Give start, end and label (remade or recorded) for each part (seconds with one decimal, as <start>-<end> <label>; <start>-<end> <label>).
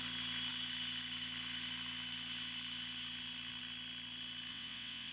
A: 0.0-4.5 recorded; 4.5-5.1 remade